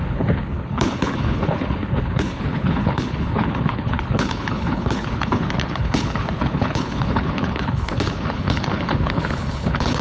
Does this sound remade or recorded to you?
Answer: remade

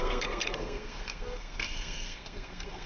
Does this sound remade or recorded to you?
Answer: remade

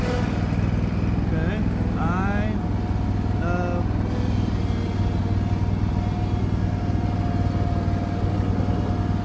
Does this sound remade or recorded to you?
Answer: recorded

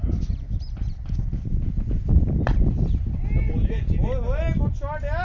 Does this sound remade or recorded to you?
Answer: recorded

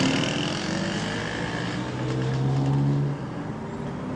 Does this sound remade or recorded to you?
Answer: recorded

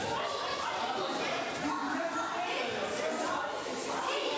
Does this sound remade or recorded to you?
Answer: recorded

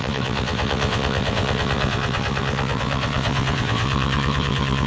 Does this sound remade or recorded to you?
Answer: remade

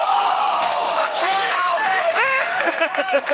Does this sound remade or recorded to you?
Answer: remade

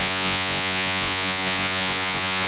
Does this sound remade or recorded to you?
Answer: remade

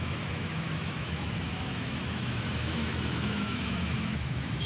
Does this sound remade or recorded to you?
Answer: remade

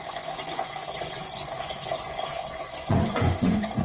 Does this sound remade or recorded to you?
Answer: remade